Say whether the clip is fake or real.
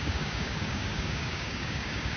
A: fake